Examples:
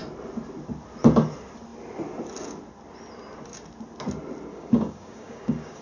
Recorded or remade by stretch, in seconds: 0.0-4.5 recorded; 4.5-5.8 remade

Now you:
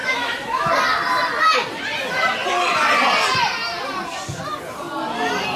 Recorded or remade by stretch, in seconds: 0.0-0.7 remade; 0.7-5.6 recorded

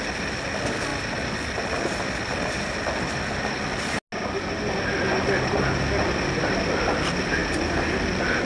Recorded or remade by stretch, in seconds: 0.0-8.4 recorded